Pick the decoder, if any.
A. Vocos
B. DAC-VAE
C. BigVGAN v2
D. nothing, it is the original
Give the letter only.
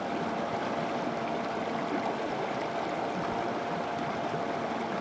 D